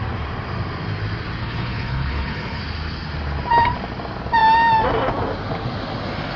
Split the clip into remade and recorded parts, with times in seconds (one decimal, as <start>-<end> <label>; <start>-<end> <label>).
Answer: 0.0-1.4 recorded; 1.4-2.6 remade; 2.6-6.4 recorded